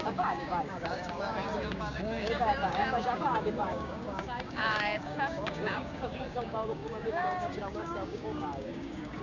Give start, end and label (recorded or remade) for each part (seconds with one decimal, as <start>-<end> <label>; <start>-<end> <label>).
0.0-9.2 remade